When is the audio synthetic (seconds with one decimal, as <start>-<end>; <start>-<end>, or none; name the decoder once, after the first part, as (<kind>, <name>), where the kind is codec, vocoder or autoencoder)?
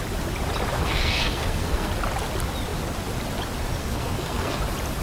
0.7-1.9 (codec, SNAC); 3.8-4.6